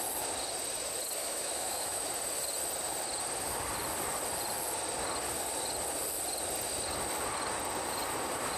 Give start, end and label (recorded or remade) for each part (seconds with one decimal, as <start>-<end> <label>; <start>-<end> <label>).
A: 0.0-1.2 recorded; 1.2-2.1 remade; 2.1-8.6 recorded